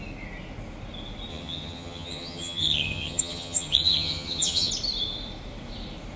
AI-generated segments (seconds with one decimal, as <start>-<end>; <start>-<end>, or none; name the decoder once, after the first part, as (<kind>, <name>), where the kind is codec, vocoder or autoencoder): 1.3-4.7 (vocoder, HiFi-GAN)